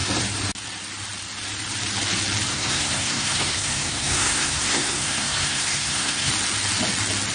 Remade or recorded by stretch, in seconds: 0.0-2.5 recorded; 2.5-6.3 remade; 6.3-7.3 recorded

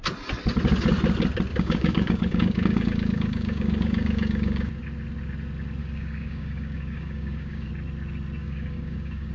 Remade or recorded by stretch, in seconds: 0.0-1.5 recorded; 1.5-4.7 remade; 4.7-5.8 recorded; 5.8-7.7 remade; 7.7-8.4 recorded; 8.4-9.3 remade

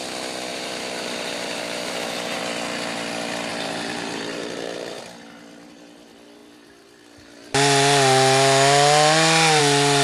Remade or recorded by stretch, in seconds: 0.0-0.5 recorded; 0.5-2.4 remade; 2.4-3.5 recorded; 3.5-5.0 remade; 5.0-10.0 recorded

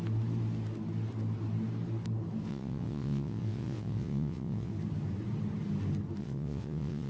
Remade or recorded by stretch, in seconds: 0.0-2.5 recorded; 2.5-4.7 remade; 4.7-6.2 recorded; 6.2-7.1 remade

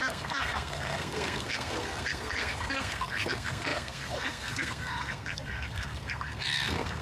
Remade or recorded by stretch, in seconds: 0.0-7.0 remade